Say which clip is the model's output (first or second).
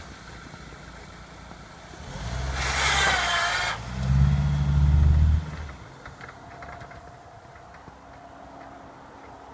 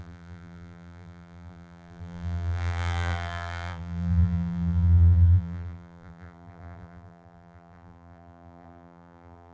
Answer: second